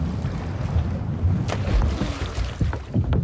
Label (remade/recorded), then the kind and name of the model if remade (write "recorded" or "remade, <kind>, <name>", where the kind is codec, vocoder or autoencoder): recorded